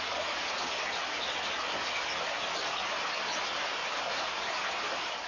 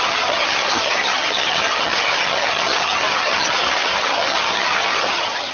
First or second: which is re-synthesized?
second